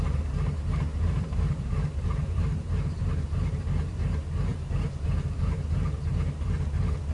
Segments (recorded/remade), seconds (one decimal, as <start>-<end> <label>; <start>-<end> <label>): 0.0-0.9 recorded; 0.9-3.0 remade; 3.0-4.5 recorded; 4.5-5.7 remade; 5.7-7.1 recorded

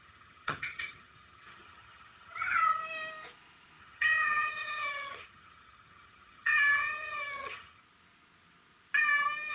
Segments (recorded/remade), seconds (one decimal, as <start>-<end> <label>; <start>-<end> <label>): 0.0-2.8 remade; 2.8-3.8 recorded; 3.8-7.8 remade; 7.8-9.5 recorded

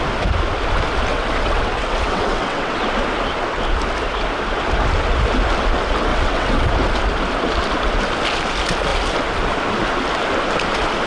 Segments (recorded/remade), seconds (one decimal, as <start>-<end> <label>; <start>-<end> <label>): 0.0-1.1 recorded; 1.1-2.8 remade; 2.8-6.1 recorded; 6.1-6.7 remade; 6.7-11.1 recorded

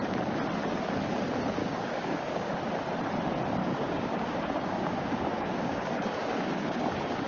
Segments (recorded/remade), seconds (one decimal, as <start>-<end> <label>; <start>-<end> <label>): 0.0-1.6 recorded; 1.6-2.6 remade; 2.6-3.6 recorded; 3.6-7.3 remade

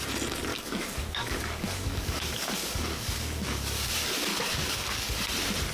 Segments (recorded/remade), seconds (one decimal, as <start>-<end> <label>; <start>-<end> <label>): 0.0-0.5 recorded; 0.5-3.9 remade; 3.9-4.3 recorded; 4.3-5.3 remade; 5.3-5.7 recorded

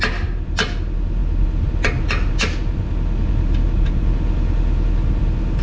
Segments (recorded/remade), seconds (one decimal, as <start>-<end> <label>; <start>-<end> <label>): 0.0-5.6 recorded

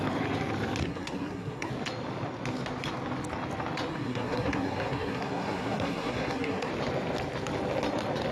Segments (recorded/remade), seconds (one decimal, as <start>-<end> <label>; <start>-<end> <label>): 0.0-0.8 recorded; 0.8-1.7 remade; 1.7-3.9 recorded; 3.9-6.7 remade; 6.7-8.3 recorded